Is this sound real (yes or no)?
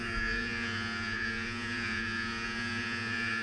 no